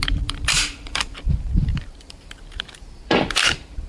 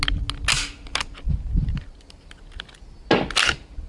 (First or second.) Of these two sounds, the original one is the second